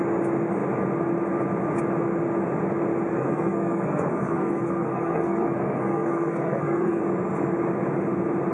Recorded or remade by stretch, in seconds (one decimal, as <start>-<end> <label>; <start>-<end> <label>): 0.0-3.1 recorded; 3.1-7.0 remade; 7.0-8.5 recorded